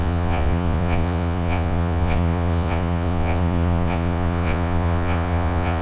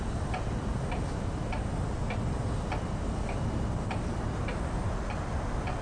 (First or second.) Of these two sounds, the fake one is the first